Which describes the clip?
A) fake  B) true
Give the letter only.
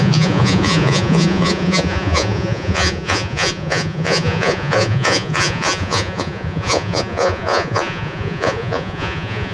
A